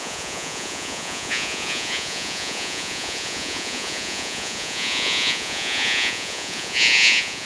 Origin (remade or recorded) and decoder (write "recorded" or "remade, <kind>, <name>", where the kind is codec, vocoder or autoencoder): remade, vocoder, Vocos